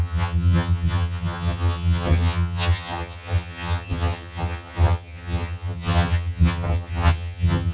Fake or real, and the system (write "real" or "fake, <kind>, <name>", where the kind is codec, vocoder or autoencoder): fake, vocoder, HiFi-GAN